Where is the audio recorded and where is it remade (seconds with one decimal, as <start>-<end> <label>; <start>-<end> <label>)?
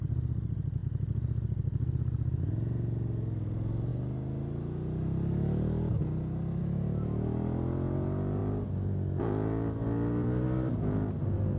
0.0-11.6 recorded